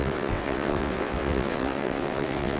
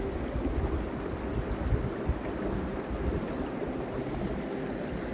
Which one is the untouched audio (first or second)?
second